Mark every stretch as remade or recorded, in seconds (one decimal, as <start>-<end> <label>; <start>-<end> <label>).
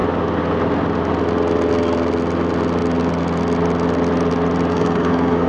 0.0-4.7 recorded; 4.7-5.5 remade